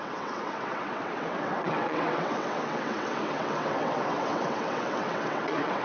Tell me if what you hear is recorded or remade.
remade